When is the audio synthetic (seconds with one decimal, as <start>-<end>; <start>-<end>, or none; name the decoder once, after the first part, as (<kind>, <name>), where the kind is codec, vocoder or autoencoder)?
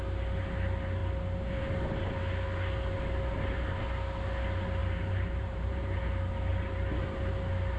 4.8-6.0 (vocoder, BigVGAN v2); 6.5-7.2